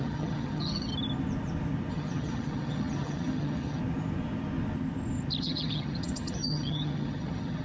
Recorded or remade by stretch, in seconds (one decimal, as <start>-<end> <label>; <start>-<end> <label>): 0.0-0.9 remade; 0.9-1.9 recorded; 1.9-3.8 remade; 3.8-5.4 recorded; 5.4-7.6 remade